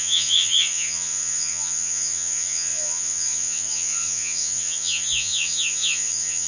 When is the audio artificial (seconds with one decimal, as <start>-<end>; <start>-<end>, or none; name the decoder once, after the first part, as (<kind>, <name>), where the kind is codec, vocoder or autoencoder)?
0.0-6.5 (vocoder, Vocos)